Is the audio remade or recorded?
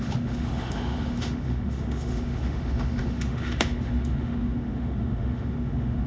remade